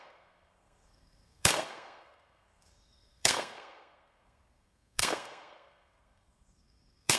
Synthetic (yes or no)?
yes